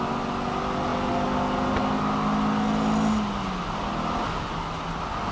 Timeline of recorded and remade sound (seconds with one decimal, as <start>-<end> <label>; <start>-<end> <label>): 0.0-5.3 recorded